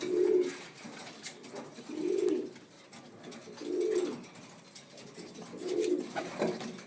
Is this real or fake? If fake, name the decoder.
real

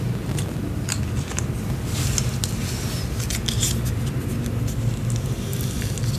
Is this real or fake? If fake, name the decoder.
real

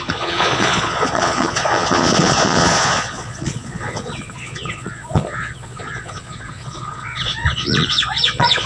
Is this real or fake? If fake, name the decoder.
fake, vocoder, Vocos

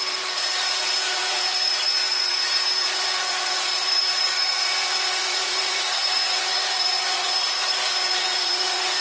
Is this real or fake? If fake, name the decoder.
fake, vocoder, Vocos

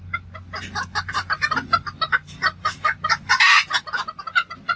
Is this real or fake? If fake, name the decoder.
real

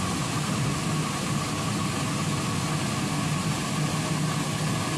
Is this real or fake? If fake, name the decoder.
real